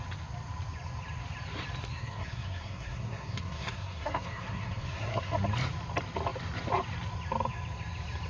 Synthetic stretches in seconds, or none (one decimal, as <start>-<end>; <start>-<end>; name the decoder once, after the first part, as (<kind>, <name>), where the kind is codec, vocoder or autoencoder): 1.9-5.3 (codec, SNAC)